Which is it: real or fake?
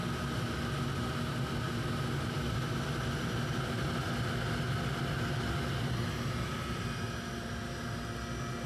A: real